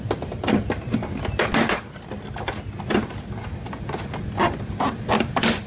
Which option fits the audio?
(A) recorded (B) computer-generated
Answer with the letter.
A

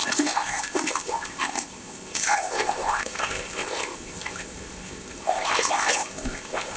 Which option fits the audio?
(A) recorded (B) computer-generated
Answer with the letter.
B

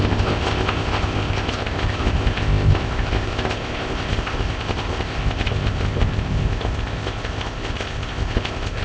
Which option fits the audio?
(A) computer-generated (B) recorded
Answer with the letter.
A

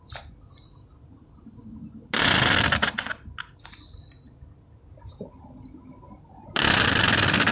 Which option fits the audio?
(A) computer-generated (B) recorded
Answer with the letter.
B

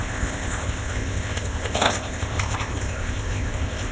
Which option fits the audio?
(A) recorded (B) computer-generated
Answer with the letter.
B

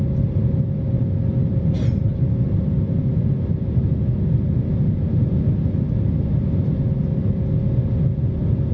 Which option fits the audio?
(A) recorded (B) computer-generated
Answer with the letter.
A